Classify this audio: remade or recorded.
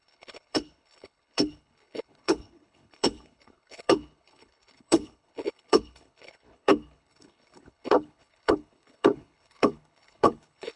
remade